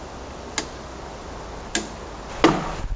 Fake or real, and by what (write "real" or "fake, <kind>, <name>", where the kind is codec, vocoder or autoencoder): real